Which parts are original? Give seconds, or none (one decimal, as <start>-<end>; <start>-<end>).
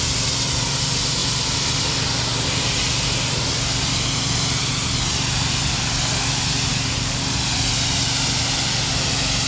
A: 0.0-6.7; 7.2-9.5